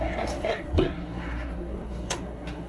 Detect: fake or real fake